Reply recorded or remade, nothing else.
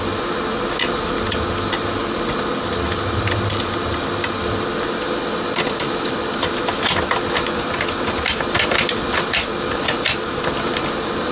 recorded